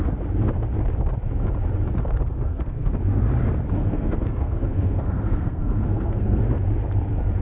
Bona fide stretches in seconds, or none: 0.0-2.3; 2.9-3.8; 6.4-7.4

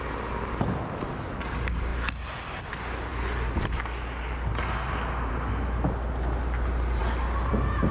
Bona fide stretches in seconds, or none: 0.0-7.9

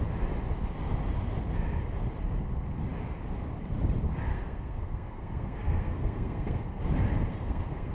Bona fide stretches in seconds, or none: 0.0-4.3; 6.8-7.3